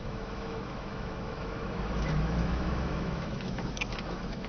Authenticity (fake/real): fake